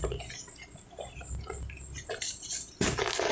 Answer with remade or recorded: recorded